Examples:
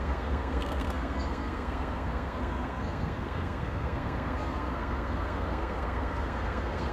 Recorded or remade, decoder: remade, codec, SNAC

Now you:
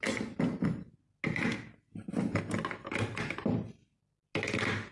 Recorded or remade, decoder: recorded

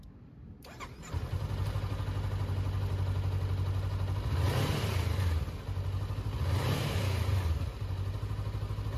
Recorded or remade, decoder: recorded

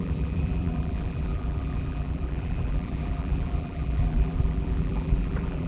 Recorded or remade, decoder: remade, vocoder, BigVGAN v2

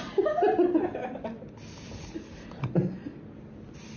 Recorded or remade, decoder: recorded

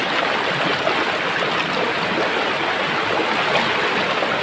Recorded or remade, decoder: recorded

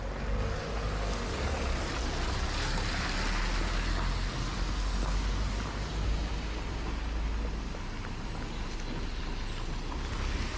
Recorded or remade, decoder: recorded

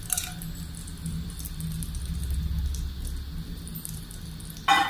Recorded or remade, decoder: recorded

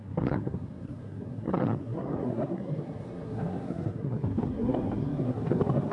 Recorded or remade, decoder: remade, codec, SNAC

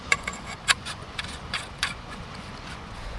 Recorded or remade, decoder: remade, vocoder, Vocos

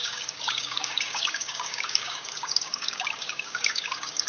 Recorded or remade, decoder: remade, codec, DAC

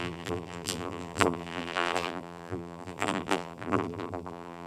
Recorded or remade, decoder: remade, vocoder, BigVGAN v2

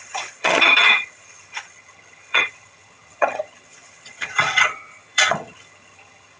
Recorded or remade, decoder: remade, vocoder, HiFi-GAN